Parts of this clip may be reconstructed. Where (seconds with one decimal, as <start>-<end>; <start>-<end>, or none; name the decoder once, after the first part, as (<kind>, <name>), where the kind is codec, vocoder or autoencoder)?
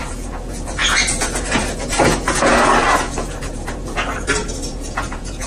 0.0-5.5 (vocoder, Vocos)